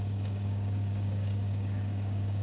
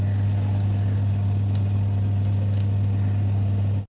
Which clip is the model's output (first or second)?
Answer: first